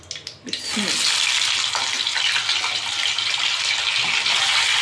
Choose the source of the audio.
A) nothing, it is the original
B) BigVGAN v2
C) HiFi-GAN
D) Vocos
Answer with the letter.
A